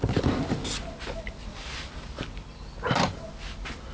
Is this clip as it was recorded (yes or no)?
yes